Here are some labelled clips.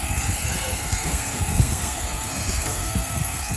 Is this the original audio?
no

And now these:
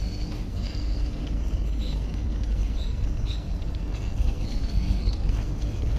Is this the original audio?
no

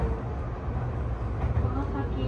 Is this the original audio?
yes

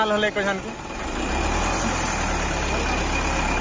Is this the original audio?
yes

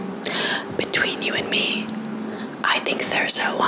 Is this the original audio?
yes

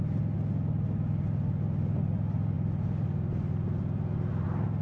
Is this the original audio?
yes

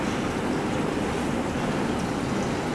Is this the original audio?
yes